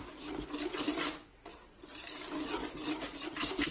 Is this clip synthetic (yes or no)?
no